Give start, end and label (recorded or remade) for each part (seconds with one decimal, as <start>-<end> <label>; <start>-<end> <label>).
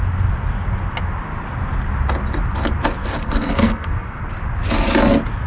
0.0-3.0 recorded; 3.0-4.2 remade; 4.2-5.5 recorded